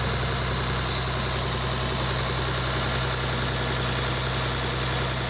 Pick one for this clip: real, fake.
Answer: real